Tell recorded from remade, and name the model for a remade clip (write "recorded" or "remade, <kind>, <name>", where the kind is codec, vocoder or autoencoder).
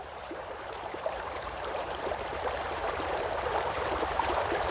remade, vocoder, BigVGAN v2